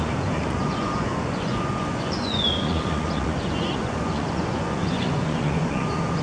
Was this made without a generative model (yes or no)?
no